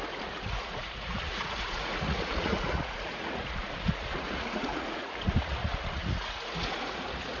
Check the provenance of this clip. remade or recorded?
remade